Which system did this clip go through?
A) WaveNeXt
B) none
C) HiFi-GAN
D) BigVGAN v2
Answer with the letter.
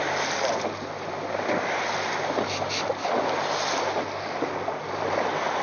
B